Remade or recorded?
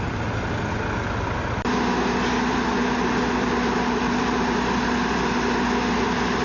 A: recorded